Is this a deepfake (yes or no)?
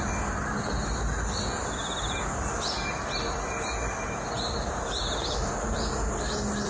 no